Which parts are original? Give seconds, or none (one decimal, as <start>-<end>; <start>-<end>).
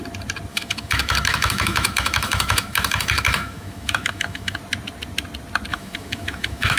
0.0-0.5; 4.6-5.7